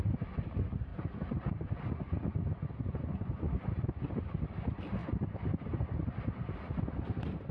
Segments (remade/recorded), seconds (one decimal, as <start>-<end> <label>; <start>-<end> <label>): 0.0-7.5 recorded